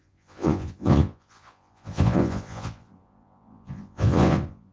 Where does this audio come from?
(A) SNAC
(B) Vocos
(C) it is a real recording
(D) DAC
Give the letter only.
B